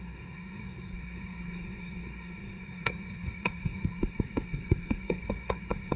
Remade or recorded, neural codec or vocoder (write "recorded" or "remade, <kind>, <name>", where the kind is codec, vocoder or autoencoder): remade, codec, SNAC